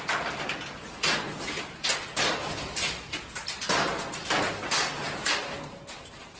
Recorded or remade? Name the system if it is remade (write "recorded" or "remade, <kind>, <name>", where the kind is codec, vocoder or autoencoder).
recorded